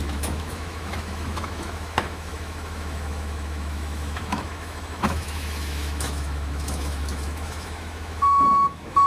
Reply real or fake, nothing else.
fake